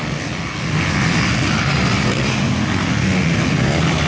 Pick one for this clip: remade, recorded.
recorded